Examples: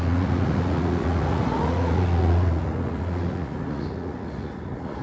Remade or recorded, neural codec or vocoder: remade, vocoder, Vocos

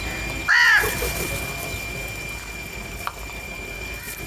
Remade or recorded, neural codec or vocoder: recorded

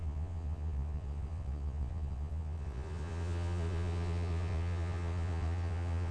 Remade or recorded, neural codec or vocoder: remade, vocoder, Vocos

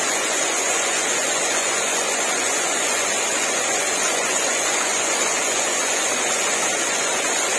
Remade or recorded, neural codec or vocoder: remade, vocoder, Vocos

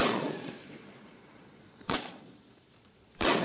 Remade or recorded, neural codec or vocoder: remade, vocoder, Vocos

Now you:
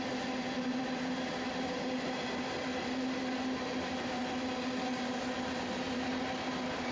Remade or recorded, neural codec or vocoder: recorded